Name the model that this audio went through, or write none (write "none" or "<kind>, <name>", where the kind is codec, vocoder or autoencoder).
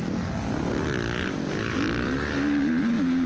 none